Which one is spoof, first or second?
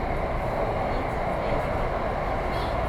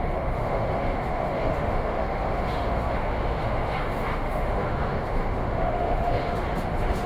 second